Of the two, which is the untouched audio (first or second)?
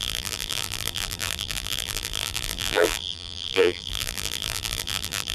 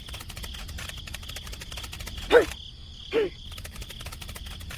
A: second